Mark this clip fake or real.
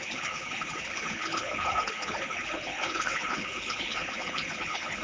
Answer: fake